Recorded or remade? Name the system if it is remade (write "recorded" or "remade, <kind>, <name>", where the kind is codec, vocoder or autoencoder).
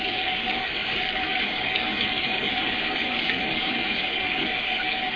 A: remade, codec, DAC